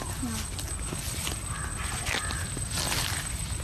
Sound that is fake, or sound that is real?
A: real